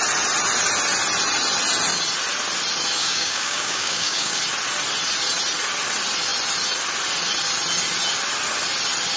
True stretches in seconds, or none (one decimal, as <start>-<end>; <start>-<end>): 0.0-3.0; 4.4-9.2